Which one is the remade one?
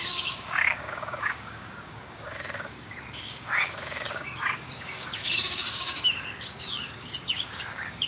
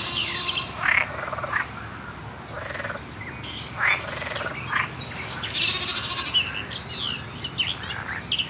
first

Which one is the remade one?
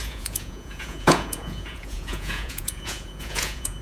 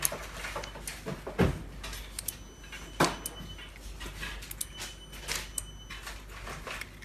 first